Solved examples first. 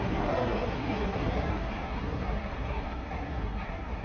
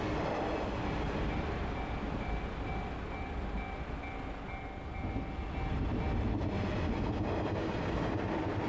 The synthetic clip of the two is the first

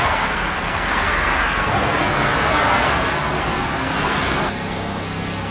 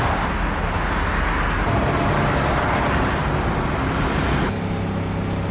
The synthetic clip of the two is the first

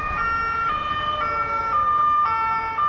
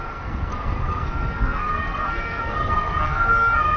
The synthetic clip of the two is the second